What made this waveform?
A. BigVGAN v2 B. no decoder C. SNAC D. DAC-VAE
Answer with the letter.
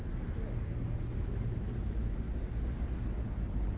B